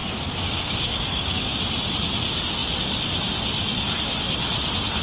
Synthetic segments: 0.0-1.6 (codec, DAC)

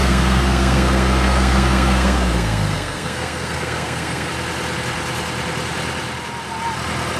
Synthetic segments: 0.0-4.3 (codec, SNAC)